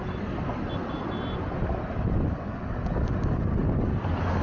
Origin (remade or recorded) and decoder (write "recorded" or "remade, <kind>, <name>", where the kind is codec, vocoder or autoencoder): recorded